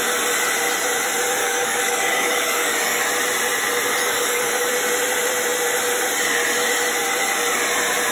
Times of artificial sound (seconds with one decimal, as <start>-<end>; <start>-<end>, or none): 1.4-3.0; 4.0-4.7